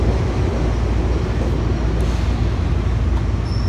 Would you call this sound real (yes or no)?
yes